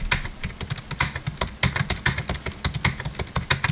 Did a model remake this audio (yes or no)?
no